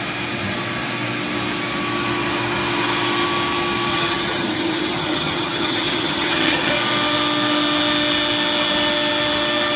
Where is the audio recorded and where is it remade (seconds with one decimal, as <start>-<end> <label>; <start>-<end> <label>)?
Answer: 0.0-3.9 recorded; 3.9-6.7 remade; 6.7-9.8 recorded